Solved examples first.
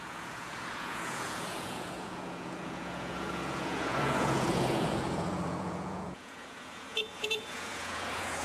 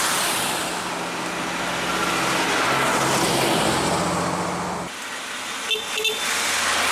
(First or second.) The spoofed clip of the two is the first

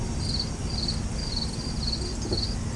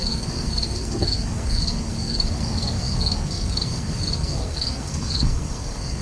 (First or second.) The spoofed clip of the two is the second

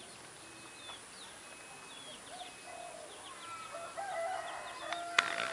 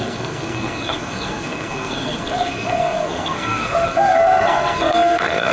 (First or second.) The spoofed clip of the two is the second